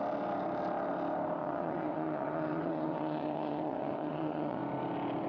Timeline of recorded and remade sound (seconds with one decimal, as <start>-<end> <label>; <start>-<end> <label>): 0.0-1.4 recorded; 1.4-4.6 remade; 4.6-5.3 recorded